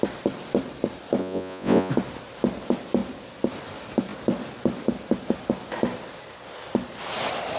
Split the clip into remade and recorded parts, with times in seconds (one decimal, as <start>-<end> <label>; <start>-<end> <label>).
0.0-1.2 recorded; 1.2-1.9 remade; 1.9-7.6 recorded